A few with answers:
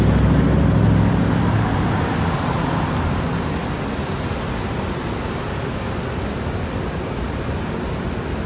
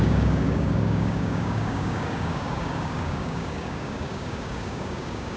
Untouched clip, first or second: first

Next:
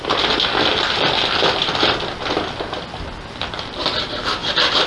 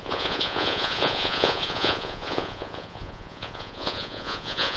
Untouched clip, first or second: first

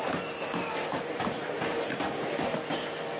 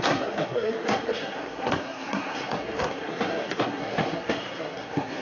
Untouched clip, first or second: first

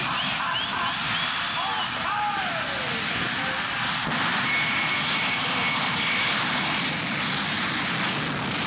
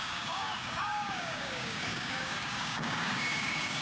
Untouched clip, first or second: first